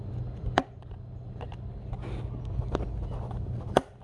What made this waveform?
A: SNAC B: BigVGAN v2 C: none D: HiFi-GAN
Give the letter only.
C